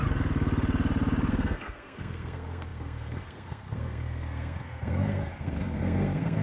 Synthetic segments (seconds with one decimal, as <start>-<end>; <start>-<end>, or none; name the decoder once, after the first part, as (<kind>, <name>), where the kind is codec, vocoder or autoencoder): 1.3-6.4 (codec, SNAC)